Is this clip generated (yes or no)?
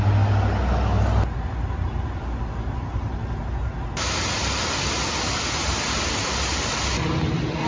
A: no